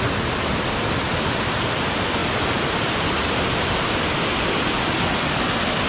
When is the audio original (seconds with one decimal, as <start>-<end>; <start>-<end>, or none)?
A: 0.0-5.9